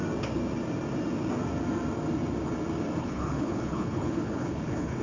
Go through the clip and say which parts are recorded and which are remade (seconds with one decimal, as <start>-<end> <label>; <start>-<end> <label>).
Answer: 0.0-3.0 recorded; 3.0-5.0 remade